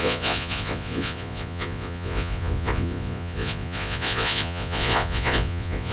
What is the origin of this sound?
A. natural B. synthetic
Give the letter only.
B